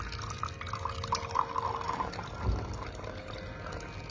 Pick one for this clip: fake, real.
real